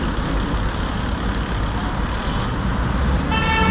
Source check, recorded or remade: recorded